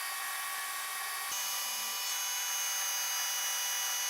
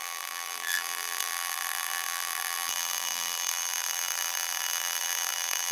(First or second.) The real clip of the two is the first